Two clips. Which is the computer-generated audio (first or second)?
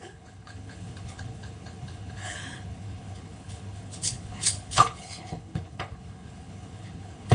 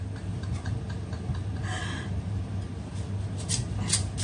first